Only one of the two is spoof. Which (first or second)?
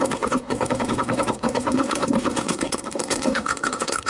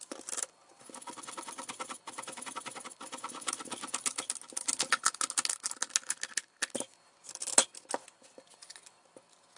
first